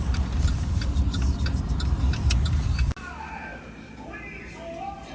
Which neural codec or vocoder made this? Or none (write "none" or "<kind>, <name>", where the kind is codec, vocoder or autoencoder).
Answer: none